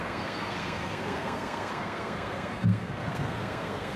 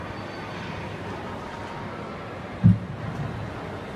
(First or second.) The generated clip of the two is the first